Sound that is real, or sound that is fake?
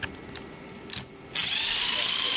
real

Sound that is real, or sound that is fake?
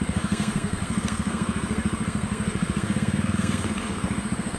fake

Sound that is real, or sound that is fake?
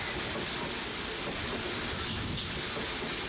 real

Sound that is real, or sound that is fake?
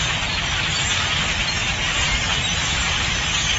real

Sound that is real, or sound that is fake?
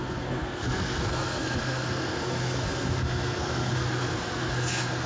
fake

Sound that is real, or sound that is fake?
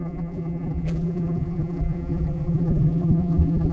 fake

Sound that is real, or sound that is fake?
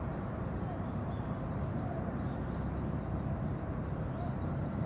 fake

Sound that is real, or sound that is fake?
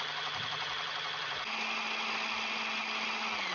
real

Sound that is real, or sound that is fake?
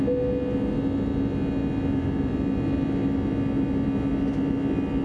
real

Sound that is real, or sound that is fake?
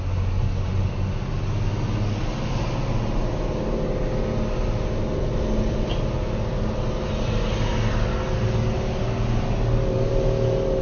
real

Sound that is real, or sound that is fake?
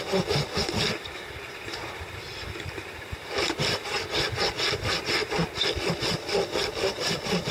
real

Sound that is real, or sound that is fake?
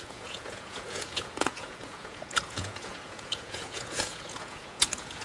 fake